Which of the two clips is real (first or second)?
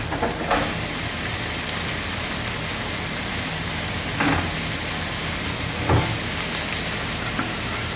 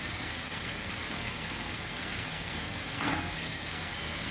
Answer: first